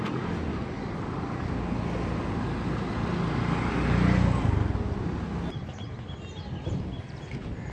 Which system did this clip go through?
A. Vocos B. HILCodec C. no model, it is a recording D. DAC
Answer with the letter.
C